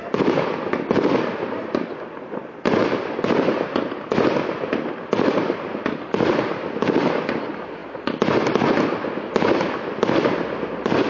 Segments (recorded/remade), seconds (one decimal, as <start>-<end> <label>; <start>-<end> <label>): 0.0-7.8 remade; 7.8-10.2 recorded; 10.2-11.1 remade